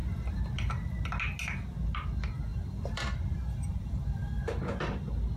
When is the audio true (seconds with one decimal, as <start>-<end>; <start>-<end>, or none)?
0.0-2.5; 4.5-5.4